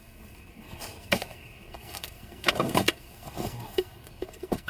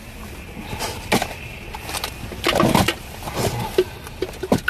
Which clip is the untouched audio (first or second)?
second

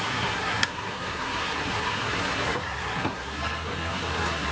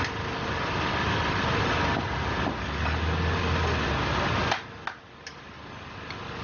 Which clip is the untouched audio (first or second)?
second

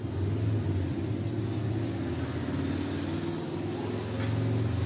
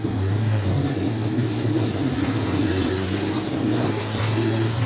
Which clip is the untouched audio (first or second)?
first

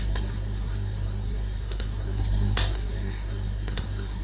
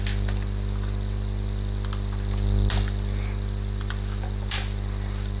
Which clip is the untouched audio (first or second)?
second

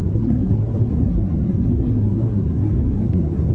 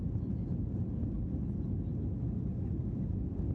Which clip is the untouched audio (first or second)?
second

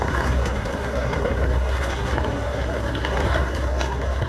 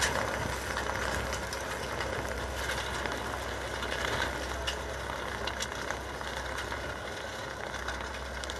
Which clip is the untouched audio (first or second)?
second